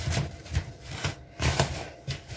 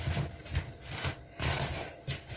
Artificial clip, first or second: first